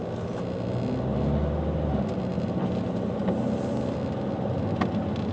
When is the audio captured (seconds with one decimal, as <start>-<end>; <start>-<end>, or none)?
0.0-5.3